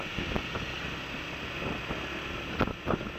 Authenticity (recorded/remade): recorded